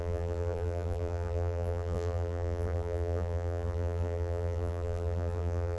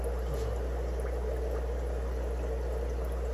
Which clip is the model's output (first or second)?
first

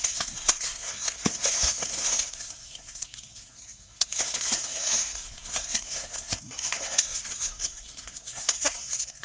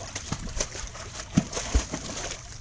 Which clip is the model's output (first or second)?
first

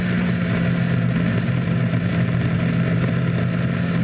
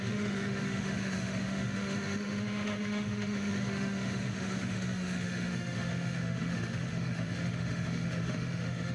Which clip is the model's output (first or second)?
second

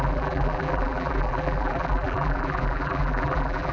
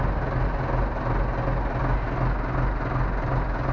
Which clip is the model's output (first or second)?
first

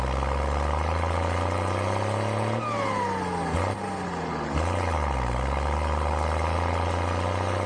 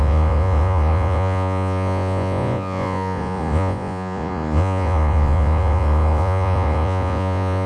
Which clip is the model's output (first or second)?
second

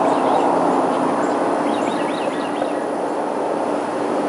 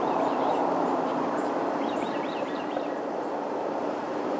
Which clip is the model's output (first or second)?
second